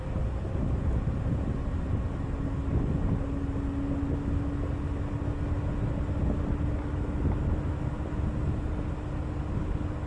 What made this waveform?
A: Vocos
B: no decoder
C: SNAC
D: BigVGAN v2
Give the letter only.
B